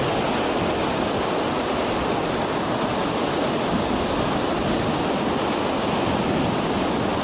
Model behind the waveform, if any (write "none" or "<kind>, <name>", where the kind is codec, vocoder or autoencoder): none